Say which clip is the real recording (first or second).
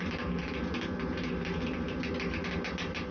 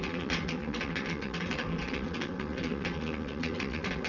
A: first